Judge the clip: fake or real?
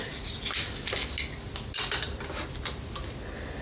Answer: real